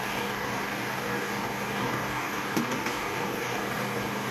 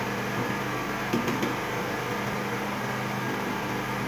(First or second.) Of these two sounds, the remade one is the first